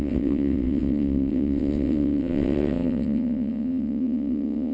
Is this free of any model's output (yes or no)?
no